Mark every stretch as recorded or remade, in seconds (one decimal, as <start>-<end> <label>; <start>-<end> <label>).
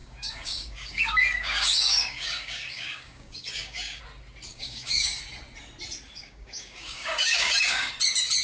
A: 0.0-4.0 remade; 4.0-4.5 recorded; 4.5-5.2 remade; 5.2-6.2 recorded; 6.2-7.9 remade; 7.9-8.4 recorded